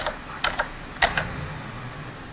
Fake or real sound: real